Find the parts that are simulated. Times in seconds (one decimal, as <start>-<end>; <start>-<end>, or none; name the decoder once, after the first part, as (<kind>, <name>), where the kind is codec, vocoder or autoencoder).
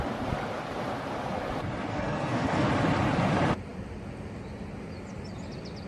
1.9-2.7 (codec, SNAC)